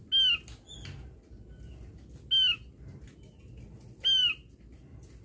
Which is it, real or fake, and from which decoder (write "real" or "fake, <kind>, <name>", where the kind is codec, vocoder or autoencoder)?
real